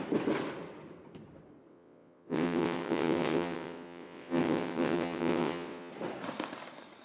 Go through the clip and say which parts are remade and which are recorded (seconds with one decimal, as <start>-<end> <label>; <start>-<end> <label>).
0.0-1.7 recorded; 1.7-5.9 remade; 5.9-7.0 recorded